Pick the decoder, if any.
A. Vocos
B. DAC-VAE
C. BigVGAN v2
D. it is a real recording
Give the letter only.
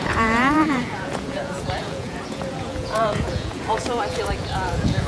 A